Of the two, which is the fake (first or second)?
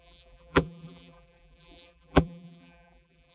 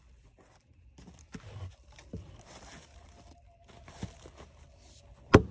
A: first